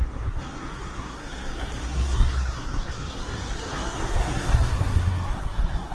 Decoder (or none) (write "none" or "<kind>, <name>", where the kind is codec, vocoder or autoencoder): codec, SNAC